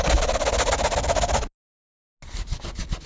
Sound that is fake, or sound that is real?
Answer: real